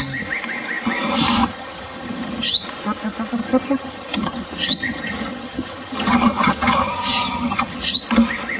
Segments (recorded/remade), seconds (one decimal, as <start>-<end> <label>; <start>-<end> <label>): 0.0-1.4 recorded; 1.4-2.6 remade; 2.6-3.4 recorded; 3.4-8.0 remade; 8.0-8.6 recorded